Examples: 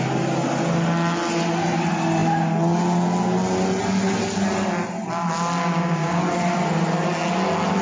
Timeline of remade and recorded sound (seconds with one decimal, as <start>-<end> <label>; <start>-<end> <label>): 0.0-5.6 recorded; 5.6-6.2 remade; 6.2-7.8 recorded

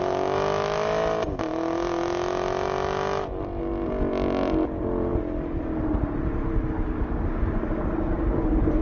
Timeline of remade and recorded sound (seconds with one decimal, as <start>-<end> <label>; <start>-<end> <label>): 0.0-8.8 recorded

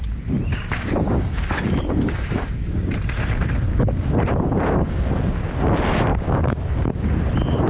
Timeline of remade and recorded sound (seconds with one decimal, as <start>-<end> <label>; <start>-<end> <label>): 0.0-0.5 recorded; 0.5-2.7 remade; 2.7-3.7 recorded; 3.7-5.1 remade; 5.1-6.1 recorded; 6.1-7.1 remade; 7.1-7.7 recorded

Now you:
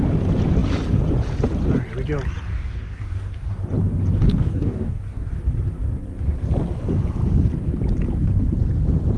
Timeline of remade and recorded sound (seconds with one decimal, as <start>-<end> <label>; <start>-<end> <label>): 0.0-2.5 recorded; 2.5-3.6 remade; 3.6-4.2 recorded; 4.2-5.4 remade; 5.4-9.2 recorded

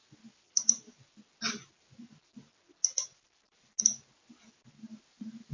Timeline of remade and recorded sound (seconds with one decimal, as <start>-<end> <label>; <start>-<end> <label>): 0.0-5.5 recorded

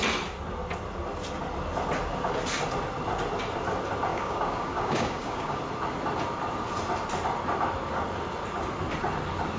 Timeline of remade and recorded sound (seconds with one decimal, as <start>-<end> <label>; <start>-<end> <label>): 0.0-4.1 recorded; 4.1-5.6 remade; 5.6-9.6 recorded